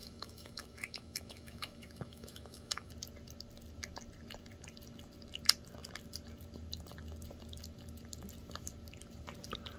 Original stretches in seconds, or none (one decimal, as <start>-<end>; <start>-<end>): 2.9-9.8

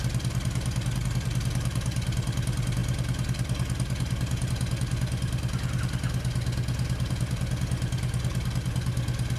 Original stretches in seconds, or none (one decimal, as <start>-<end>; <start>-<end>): 0.0-9.4

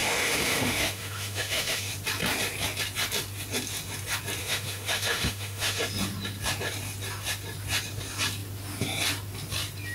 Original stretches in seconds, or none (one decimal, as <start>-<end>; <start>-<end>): 1.9-4.4; 5.8-9.9

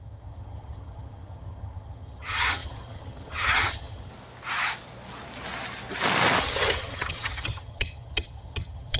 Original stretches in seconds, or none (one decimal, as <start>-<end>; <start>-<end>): 4.1-6.4